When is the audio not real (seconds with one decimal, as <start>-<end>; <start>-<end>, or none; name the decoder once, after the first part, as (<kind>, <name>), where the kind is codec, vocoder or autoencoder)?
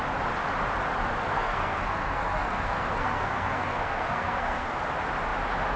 1.3-4.8 (codec, SNAC)